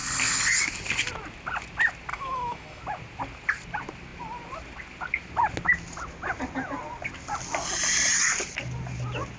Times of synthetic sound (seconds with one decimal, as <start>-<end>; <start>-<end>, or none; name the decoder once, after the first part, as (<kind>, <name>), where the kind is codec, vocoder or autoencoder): 2.1-2.8 (autoencoder, DAC-VAE)